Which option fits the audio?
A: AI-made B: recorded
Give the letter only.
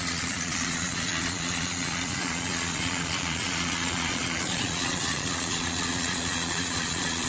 A